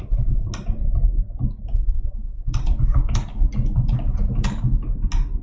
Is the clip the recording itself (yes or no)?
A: yes